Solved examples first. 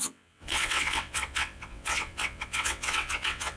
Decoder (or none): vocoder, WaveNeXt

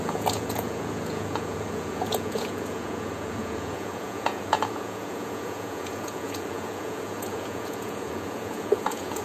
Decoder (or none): vocoder, Vocos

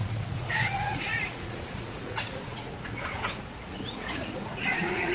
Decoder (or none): vocoder, Vocos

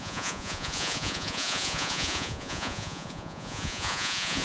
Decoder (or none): vocoder, Vocos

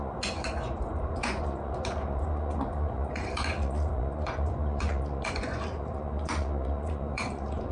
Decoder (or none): vocoder, Vocos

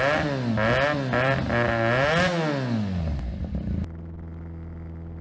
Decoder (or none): none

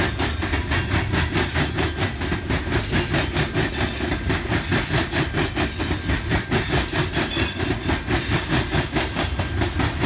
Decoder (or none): none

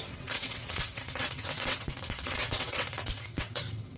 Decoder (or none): vocoder, WaveNeXt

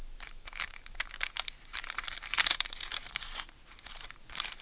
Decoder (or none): vocoder, BigVGAN v2